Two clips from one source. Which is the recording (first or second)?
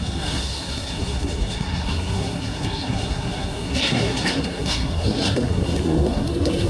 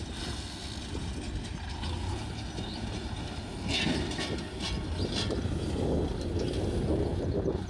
second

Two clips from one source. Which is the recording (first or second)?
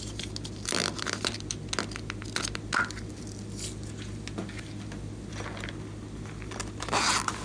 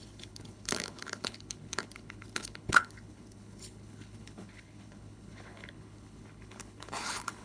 first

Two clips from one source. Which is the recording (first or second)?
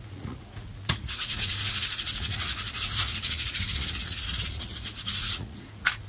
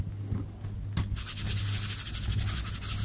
second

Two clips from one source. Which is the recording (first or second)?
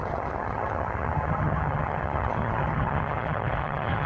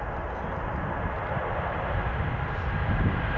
second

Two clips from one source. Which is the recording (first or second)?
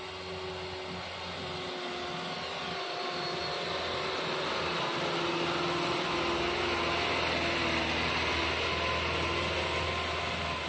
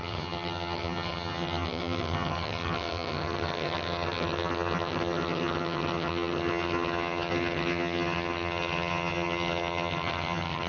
first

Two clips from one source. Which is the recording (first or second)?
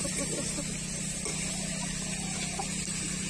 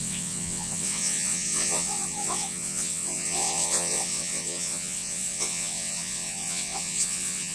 first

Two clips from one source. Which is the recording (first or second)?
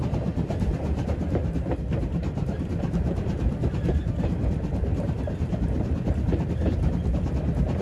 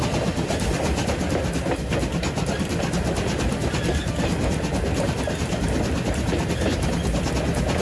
second